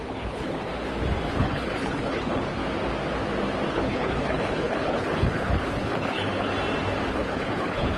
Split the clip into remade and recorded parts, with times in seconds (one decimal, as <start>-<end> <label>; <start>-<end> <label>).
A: 0.0-0.7 remade; 0.7-1.3 recorded; 1.3-2.6 remade; 2.6-3.7 recorded; 3.7-6.5 remade; 6.5-7.1 recorded; 7.1-8.0 remade